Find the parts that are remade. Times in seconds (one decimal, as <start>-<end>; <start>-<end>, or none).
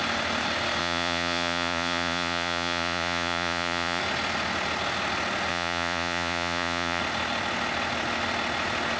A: 0.8-4.0; 5.5-7.0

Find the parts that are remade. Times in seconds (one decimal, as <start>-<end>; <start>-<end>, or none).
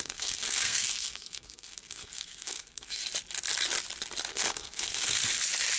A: 0.0-3.0; 4.3-5.2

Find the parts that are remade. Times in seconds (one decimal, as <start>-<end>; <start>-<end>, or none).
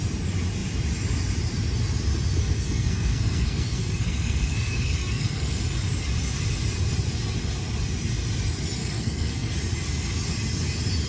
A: 2.4-5.6; 8.8-9.5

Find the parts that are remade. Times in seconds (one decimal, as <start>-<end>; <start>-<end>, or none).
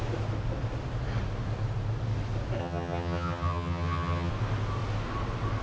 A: 2.6-4.3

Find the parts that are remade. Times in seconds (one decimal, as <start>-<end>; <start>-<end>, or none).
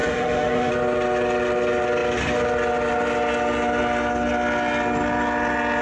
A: 0.0-0.7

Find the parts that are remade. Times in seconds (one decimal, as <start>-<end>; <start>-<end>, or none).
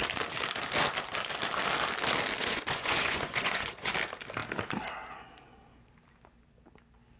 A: 2.4-3.9